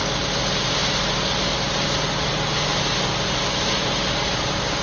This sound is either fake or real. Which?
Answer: real